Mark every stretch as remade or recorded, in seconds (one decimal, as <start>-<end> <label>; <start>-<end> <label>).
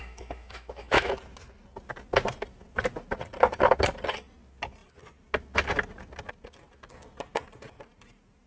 0.0-1.1 remade; 1.1-8.5 recorded